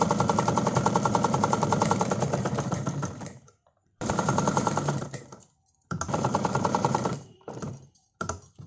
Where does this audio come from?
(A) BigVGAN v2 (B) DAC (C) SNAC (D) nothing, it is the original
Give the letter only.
A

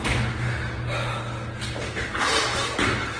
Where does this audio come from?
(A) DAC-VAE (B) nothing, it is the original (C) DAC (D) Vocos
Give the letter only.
B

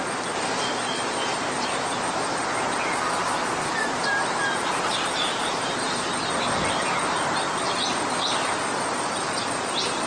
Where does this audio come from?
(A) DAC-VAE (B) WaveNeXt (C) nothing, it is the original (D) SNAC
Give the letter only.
C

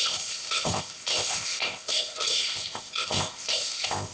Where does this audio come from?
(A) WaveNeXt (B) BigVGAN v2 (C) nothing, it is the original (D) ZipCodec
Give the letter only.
D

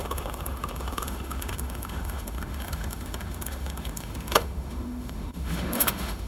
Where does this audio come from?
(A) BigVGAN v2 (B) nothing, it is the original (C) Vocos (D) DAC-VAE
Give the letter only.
D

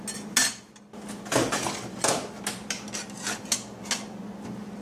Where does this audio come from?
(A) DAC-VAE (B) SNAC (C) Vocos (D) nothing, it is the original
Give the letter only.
D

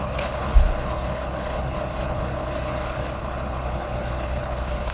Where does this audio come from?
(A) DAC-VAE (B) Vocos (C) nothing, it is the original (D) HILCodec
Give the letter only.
D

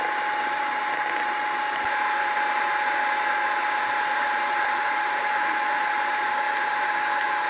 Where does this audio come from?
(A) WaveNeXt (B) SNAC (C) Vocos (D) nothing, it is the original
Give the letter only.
D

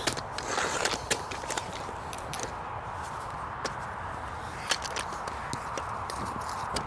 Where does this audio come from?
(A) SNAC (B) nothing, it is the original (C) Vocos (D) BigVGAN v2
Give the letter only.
B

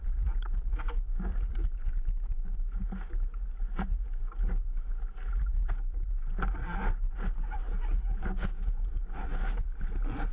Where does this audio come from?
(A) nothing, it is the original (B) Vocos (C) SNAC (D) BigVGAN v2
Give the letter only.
D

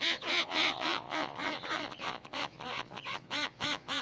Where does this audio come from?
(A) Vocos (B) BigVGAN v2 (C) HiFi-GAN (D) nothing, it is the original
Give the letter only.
A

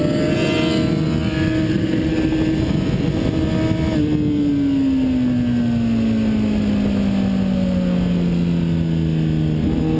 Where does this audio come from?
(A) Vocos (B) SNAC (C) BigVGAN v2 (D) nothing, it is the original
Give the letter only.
D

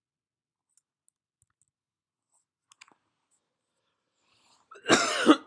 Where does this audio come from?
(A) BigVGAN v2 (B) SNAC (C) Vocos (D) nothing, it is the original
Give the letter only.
D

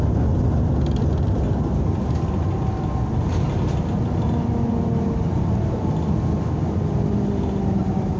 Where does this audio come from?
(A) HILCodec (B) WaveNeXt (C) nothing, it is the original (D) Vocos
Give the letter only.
C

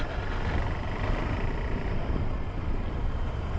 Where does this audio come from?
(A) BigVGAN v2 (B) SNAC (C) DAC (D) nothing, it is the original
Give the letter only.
A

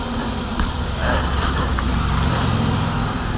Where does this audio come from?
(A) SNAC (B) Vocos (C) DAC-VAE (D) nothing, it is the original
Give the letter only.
D